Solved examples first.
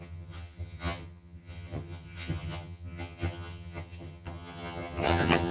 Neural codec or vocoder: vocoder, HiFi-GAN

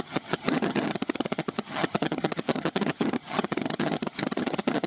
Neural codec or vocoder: vocoder, HiFi-GAN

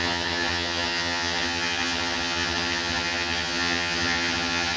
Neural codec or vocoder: vocoder, HiFi-GAN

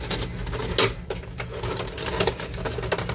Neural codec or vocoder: none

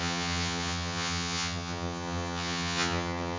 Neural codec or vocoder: vocoder, HiFi-GAN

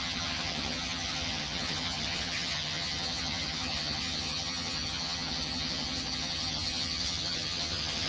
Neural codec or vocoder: vocoder, HiFi-GAN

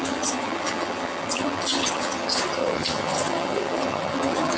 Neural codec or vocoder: vocoder, HiFi-GAN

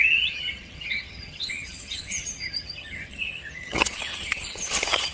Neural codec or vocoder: vocoder, HiFi-GAN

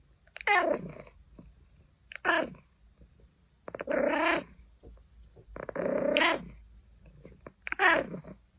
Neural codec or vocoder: none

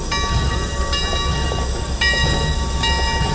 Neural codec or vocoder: none